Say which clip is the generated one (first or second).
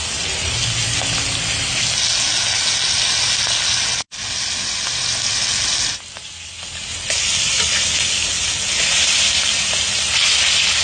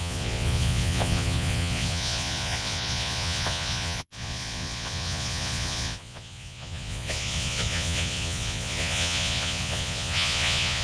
second